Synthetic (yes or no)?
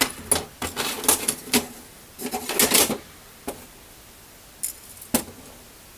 no